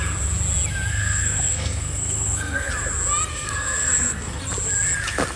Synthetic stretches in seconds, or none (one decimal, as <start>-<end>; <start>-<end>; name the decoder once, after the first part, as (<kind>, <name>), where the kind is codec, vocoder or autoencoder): 0.9-2.7 (codec, SNAC); 3.3-4.4